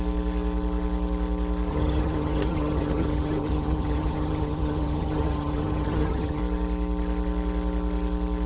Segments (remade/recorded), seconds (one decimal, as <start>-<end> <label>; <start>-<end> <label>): 0.0-1.7 recorded; 1.7-6.4 remade; 6.4-8.5 recorded